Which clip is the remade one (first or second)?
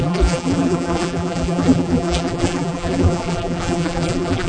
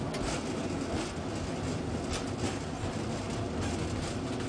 first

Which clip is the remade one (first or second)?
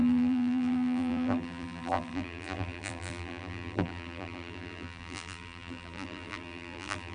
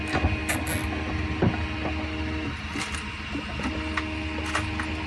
first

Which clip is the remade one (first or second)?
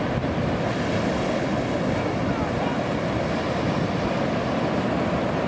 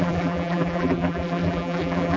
second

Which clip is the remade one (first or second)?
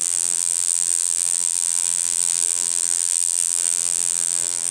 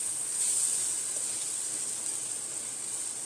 first